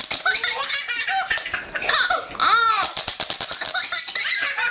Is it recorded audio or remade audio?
recorded